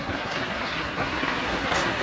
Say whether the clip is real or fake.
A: fake